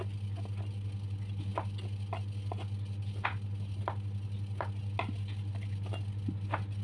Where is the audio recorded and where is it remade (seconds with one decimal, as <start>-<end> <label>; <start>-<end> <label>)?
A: 0.0-6.8 recorded